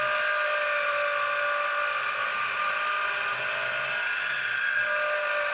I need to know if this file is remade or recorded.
recorded